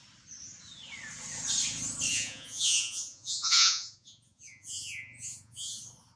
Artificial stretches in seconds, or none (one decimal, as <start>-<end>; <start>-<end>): 2.1-5.8